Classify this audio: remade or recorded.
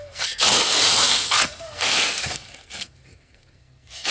remade